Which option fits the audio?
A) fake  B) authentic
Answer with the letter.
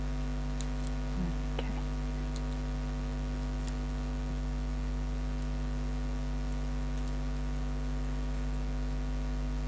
B